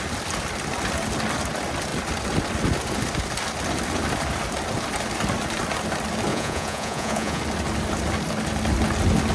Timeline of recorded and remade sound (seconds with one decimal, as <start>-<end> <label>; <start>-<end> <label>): 0.0-6.3 recorded; 6.3-7.4 remade; 7.4-9.3 recorded